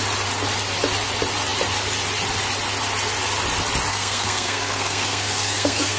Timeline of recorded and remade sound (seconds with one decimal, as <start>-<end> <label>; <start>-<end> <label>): 0.0-3.9 recorded; 3.9-6.0 remade